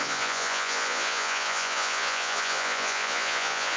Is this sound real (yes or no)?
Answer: no